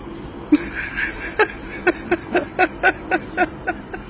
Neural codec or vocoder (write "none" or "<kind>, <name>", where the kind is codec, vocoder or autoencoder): none